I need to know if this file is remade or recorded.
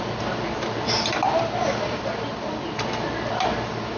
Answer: recorded